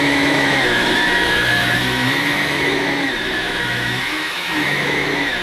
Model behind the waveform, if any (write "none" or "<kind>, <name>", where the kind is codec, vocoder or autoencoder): autoencoder, DAC-VAE